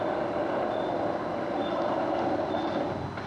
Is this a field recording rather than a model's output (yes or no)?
yes